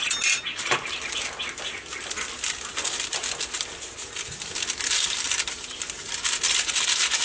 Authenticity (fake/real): real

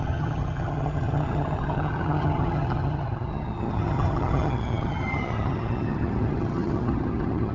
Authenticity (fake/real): fake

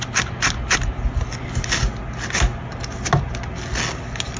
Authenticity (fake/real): real